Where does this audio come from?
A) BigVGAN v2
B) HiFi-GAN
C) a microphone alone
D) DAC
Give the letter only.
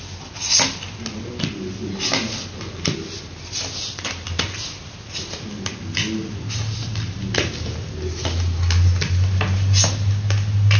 C